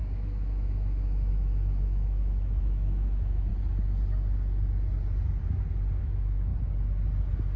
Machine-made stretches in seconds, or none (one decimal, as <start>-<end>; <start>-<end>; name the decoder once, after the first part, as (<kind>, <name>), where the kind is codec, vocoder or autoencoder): 0.0-3.5 (autoencoder, DAC-VAE); 6.0-6.5